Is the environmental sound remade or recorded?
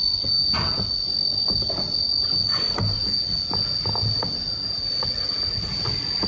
recorded